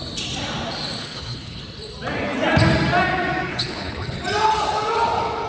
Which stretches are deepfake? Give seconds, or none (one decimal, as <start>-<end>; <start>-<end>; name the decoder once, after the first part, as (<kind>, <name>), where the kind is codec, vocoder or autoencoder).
1.0-1.6 (codec, HILCodec); 3.5-4.2